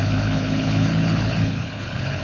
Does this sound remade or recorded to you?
remade